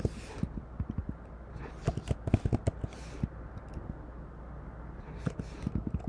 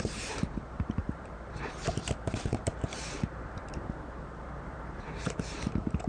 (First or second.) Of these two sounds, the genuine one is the first